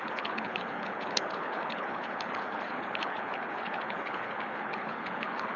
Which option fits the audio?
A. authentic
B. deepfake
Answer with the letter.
B